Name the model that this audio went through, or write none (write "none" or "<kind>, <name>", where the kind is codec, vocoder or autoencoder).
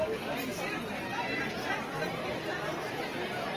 none